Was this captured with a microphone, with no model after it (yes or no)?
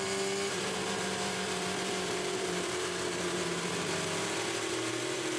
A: no